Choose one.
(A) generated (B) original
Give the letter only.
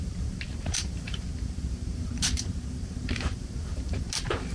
A